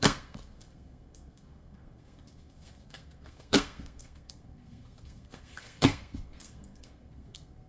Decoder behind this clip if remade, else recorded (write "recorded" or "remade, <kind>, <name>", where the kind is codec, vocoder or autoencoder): remade, codec, SNAC